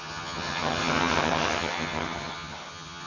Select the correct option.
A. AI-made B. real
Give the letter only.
A